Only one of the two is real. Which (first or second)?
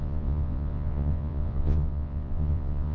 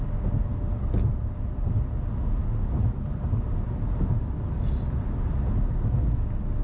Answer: second